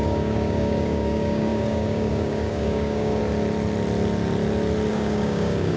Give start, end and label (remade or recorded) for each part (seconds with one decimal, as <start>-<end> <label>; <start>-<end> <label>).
0.0-3.2 remade; 3.2-4.9 recorded; 4.9-5.8 remade